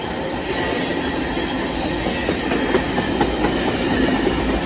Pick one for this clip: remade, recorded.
recorded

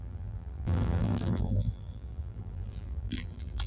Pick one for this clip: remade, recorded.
remade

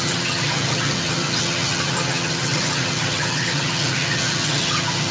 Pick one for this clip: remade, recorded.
remade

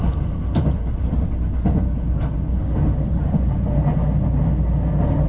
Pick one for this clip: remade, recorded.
recorded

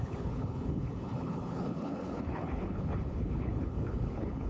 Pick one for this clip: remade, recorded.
remade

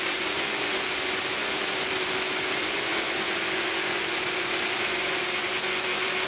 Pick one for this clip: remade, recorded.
remade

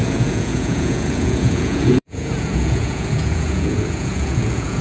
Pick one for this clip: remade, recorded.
remade